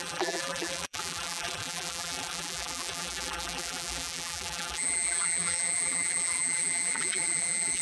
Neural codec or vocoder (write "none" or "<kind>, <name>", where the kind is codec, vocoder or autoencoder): vocoder, BigVGAN v2